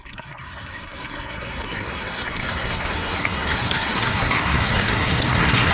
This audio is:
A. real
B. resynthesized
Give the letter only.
B